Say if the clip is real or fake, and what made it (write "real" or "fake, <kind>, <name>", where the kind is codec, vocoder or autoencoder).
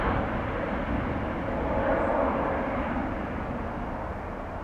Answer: real